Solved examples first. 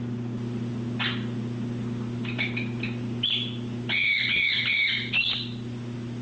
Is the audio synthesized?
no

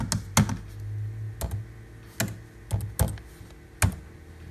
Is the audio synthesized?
no